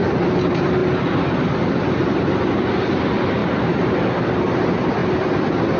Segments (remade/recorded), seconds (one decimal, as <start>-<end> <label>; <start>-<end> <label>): 0.0-3.4 recorded; 3.4-4.2 remade; 4.2-5.8 recorded